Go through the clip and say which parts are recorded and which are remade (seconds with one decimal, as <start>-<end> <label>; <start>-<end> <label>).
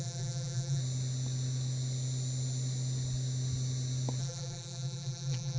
0.0-0.8 remade; 0.8-4.2 recorded; 4.2-5.6 remade